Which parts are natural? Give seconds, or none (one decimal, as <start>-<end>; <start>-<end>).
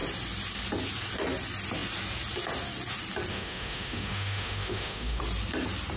0.0-3.3; 5.2-6.0